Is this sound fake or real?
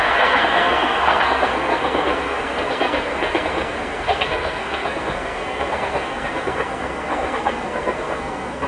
fake